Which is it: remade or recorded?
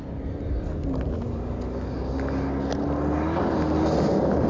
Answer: recorded